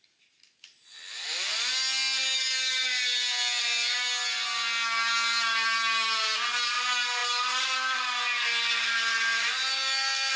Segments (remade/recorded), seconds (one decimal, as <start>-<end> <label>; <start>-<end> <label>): 0.0-10.4 recorded